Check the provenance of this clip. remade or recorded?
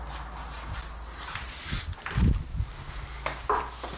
recorded